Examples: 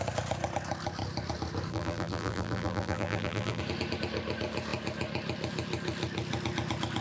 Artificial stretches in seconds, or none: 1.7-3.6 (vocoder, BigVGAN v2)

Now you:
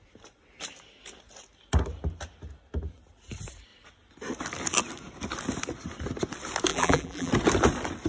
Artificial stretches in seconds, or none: 6.7-7.3 (vocoder, BigVGAN v2)

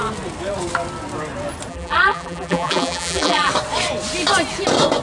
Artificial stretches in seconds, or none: 1.7-3.5 (vocoder, BigVGAN v2)

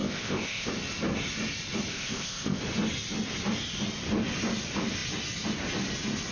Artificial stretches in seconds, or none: 0.0-0.7 (codec, ZipCodec); 1.9-2.6

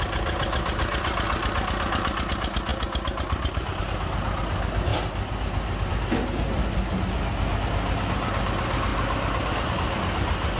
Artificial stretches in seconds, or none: none

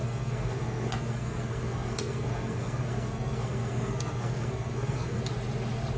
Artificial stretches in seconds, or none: 0.0-5.2 (codec, SNAC)

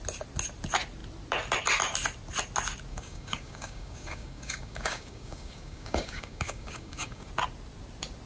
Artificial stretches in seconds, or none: 2.9-7.3 (codec, DAC)

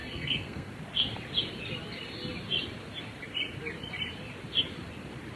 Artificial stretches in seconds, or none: 0.0-0.7 (codec, SNAC)